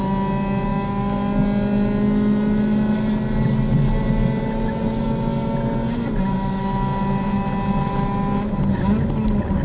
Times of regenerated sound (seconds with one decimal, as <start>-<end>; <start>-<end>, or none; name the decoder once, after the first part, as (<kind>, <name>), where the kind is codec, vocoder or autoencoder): none